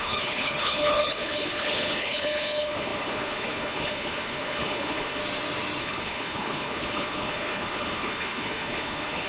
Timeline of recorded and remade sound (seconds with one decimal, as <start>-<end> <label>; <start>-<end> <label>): 0.0-5.2 remade; 5.2-5.8 recorded; 5.8-9.3 remade